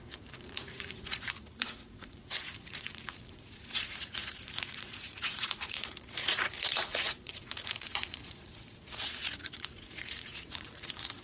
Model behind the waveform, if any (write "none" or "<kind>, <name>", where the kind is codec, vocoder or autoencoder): vocoder, Vocos